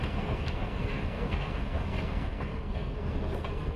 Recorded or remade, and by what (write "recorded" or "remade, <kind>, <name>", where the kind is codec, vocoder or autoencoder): remade, codec, SNAC